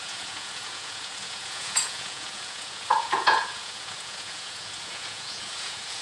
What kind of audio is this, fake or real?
fake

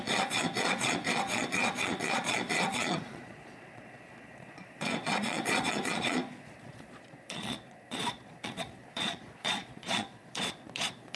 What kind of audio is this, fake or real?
fake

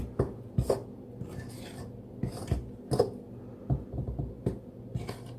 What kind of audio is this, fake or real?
real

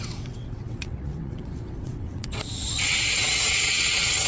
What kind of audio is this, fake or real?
fake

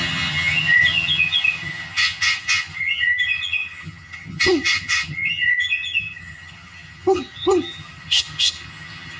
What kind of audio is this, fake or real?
fake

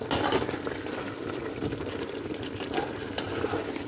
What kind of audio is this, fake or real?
real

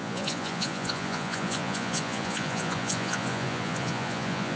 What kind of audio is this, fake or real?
fake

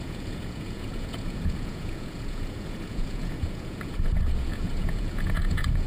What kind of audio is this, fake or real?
fake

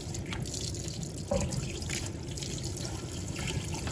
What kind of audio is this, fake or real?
real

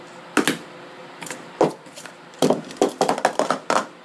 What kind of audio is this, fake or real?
real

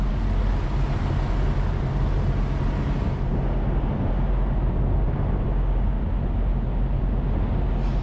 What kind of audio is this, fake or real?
real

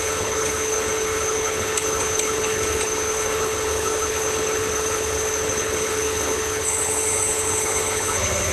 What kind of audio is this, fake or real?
fake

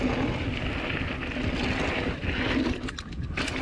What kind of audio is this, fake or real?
real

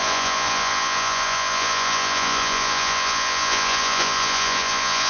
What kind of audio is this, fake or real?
fake